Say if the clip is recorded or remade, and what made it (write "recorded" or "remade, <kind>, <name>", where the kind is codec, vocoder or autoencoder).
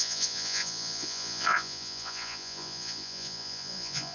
remade, vocoder, Vocos